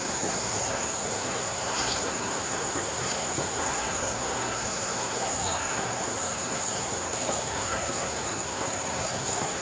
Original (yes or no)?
no